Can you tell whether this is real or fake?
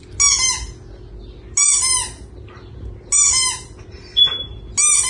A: real